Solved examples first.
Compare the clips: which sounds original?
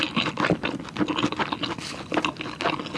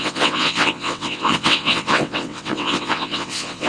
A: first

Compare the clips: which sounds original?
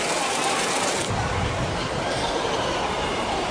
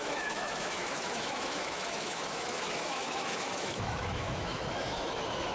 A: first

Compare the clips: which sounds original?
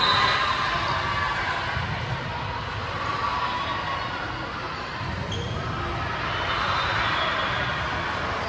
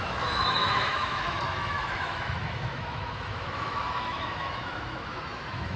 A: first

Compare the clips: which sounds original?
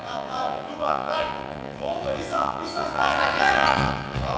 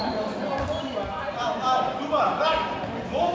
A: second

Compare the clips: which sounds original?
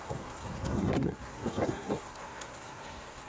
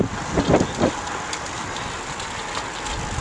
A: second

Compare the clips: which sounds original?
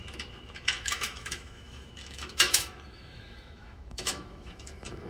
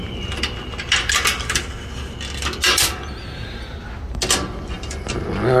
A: second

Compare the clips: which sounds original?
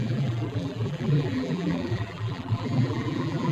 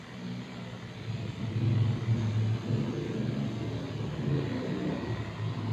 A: second